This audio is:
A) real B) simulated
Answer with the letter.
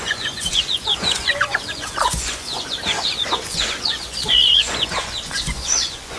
B